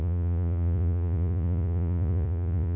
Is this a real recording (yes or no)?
no